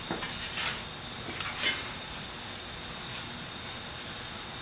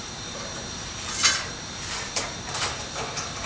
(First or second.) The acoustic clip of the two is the first